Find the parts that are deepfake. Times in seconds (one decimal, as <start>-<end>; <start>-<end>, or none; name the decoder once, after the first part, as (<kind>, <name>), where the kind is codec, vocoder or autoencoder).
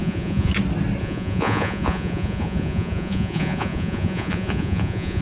0.0-0.5 (vocoder, Vocos); 1.0-5.2